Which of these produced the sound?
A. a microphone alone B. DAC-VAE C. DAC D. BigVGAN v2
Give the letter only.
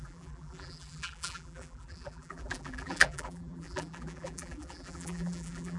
D